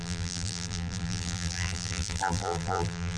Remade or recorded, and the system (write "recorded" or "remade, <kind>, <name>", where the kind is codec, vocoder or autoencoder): remade, vocoder, BigVGAN v2